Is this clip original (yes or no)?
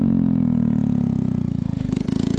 no